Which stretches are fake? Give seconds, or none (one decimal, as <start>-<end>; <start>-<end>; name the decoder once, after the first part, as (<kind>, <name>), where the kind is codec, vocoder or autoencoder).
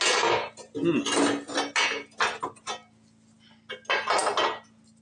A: none